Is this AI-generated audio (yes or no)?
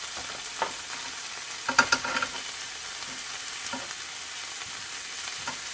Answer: no